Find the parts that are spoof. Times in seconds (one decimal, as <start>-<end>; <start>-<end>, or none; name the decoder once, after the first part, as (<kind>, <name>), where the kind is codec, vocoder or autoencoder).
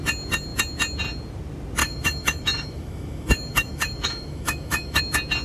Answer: 1.8-5.0 (autoencoder, DAC-VAE)